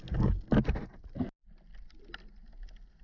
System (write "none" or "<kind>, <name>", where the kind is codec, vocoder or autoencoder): none